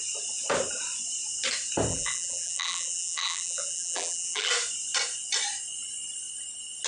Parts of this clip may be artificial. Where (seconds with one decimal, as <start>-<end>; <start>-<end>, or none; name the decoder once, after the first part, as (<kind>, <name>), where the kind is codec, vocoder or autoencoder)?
1.9-4.5 (vocoder, BigVGAN v2)

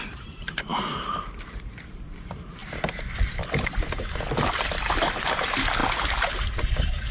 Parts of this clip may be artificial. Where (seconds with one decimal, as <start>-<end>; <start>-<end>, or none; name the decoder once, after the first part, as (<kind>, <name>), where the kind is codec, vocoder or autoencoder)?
0.0-2.6 (vocoder, BigVGAN v2); 5.2-7.1

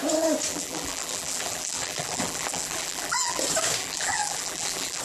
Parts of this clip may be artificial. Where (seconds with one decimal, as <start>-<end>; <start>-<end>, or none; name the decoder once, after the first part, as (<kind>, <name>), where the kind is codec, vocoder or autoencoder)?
0.5-3.4 (vocoder, BigVGAN v2); 3.8-5.0

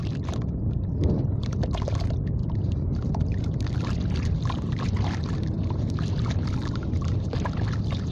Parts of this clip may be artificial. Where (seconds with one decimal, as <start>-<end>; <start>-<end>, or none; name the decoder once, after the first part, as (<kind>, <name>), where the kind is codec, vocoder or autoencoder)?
2.4-3.4 (vocoder, BigVGAN v2)

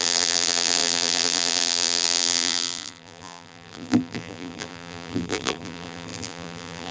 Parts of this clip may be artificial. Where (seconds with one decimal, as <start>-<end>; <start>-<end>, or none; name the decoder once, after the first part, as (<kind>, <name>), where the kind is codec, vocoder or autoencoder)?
0.0-6.9 (vocoder, BigVGAN v2)

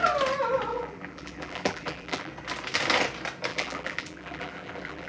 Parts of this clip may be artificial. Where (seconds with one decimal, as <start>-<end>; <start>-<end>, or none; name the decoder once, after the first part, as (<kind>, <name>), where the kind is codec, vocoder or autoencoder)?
0.7-2.3 (vocoder, BigVGAN v2); 3.5-5.1